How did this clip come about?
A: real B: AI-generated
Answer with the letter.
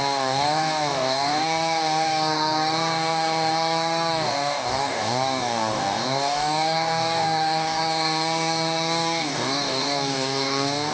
B